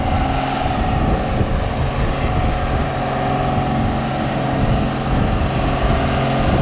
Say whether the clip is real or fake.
real